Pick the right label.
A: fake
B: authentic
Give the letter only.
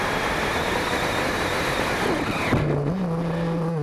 B